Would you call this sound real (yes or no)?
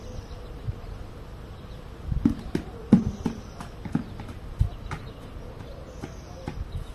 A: yes